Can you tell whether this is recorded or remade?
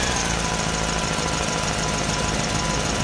recorded